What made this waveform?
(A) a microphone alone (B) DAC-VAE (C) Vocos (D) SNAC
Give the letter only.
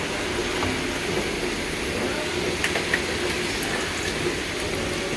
A